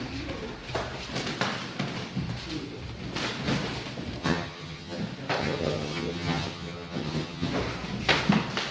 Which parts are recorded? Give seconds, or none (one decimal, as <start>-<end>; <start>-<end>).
0.0-4.2; 5.0-5.4; 7.5-8.7